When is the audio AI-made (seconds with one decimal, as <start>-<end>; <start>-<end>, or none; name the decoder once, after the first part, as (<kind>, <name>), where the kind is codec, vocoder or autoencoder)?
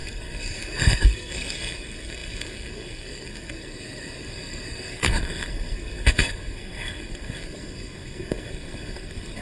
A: 0.0-9.4 (codec, SNAC)